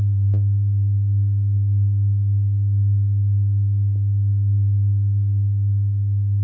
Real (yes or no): no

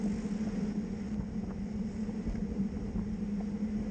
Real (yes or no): yes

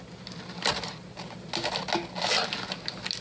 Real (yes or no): yes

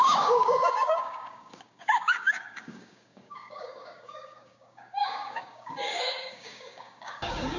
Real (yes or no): no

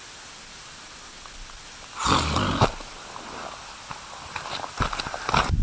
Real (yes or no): yes